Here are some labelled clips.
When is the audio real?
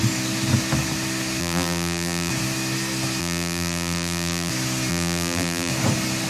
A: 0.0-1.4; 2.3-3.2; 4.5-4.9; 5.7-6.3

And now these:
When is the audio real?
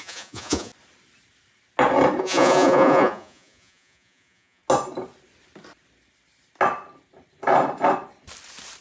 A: 0.7-2.2; 4.6-8.8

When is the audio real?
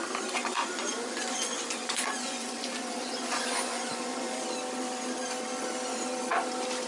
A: 0.0-0.4; 4.4-6.9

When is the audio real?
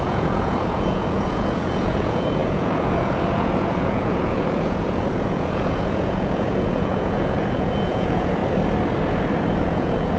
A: 8.4-9.6